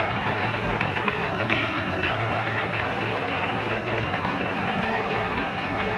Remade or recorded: remade